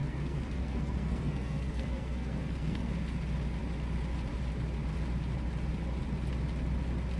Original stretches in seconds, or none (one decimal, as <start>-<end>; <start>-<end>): 2.9-7.2

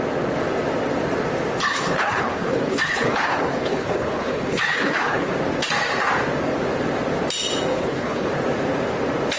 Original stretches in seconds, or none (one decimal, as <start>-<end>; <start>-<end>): 0.0-1.6; 5.3-7.7; 8.3-9.4

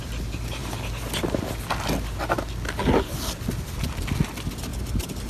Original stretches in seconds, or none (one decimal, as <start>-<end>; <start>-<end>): 0.0-4.7